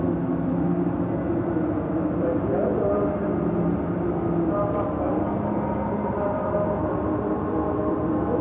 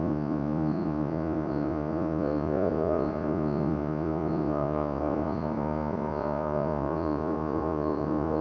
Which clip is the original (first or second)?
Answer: first